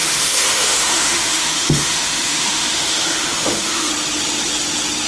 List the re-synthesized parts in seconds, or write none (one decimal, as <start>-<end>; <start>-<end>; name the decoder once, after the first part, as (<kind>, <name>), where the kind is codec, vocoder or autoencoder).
0.0-3.9 (autoencoder, DAC-VAE)